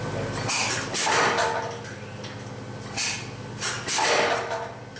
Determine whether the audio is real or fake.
real